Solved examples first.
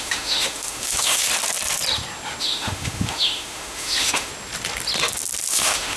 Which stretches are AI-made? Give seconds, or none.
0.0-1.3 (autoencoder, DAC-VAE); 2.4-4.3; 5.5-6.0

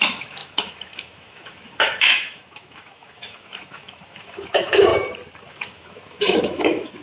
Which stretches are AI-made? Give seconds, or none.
0.0-4.9 (autoencoder, DAC-VAE); 5.5-7.0

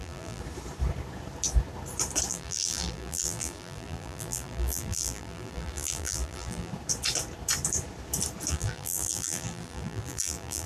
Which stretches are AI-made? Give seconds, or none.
0.0-0.4 (vocoder, BigVGAN v2); 2.3-6.7; 8.5-10.7

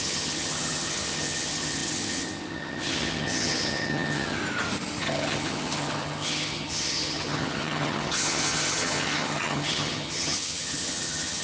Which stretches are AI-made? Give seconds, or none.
0.0-4.4 (vocoder, HiFi-GAN); 5.0-11.4

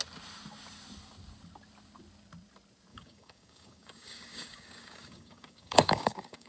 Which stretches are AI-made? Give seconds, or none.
2.9-6.5 (codec, DAC)

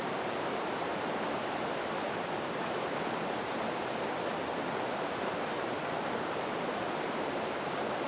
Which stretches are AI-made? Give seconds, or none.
0.0-0.9 (vocoder, BigVGAN v2); 5.6-8.1